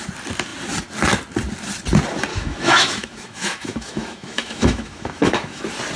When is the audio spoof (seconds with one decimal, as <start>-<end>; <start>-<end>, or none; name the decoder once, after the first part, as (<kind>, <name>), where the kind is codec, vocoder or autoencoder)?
2.3-5.6 (autoencoder, DAC-VAE)